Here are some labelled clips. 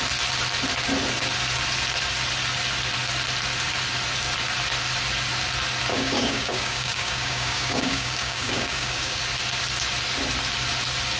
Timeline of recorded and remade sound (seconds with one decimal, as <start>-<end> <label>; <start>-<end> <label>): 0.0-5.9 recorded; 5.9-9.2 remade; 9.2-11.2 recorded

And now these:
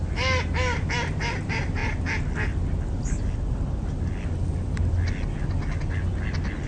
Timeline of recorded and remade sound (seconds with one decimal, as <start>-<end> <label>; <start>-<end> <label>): 0.0-6.7 recorded

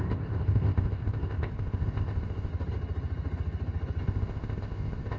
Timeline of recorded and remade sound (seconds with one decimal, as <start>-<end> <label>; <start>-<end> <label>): 0.0-2.5 remade; 2.5-4.0 recorded; 4.0-5.2 remade